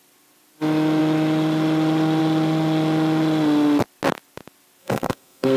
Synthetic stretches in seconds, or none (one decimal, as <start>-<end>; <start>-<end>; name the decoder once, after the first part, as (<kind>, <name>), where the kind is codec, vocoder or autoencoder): 4.8-5.6 (codec, SNAC)